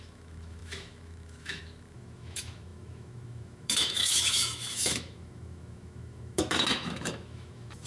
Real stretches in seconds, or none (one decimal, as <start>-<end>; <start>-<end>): none

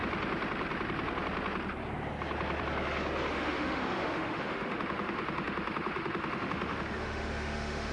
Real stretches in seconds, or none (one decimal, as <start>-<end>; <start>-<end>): 0.0-3.3

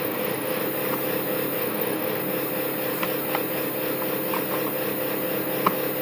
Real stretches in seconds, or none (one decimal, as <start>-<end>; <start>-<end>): 0.6-1.6; 2.2-6.0

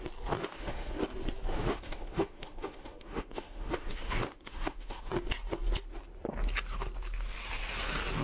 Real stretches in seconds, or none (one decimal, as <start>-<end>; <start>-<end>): 0.0-0.4; 1.0-1.5; 5.1-8.2

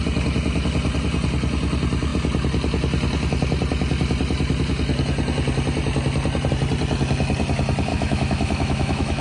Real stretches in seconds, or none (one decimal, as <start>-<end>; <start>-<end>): 0.0-7.9

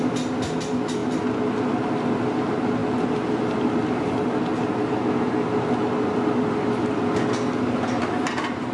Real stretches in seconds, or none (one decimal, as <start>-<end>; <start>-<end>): 0.0-8.7

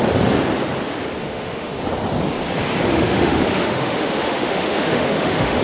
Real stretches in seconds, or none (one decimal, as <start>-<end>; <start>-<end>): 0.0-1.2; 1.8-2.9